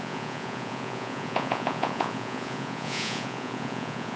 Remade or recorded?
remade